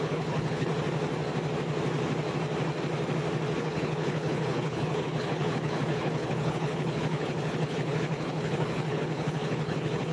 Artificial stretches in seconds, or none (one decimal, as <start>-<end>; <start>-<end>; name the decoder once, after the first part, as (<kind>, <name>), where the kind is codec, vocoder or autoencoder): 0.0-0.7 (codec, HILCodec); 3.6-10.1